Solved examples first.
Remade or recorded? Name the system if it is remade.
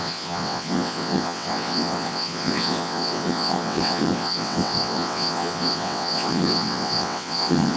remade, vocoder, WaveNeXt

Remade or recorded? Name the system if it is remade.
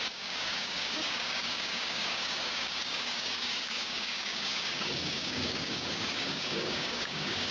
remade, codec, DAC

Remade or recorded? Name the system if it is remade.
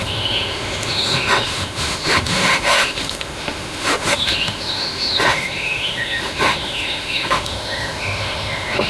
remade, autoencoder, DAC-VAE